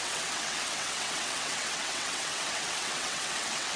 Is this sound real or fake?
fake